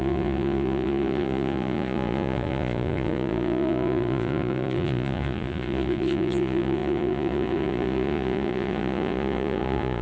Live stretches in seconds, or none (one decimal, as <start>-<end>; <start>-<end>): none